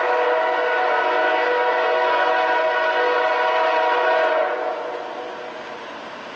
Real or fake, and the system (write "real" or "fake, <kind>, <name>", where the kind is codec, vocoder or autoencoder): real